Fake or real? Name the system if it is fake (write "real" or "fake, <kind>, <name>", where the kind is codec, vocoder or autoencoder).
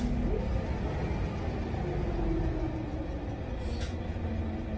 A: real